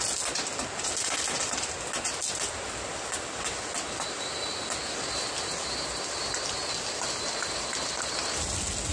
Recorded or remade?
recorded